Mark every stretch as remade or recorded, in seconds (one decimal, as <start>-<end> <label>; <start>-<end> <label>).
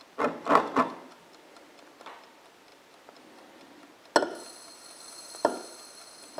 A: 0.0-6.4 recorded